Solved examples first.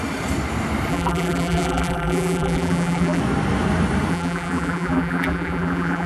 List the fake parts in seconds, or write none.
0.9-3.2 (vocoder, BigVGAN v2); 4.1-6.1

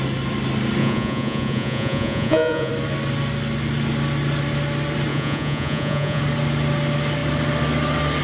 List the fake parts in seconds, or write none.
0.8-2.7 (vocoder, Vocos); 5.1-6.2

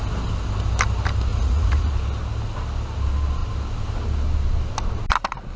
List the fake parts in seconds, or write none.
1.3-1.9 (vocoder, Vocos)